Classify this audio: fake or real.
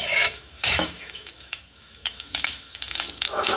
fake